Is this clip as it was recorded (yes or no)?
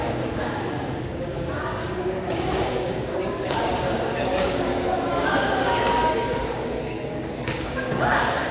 no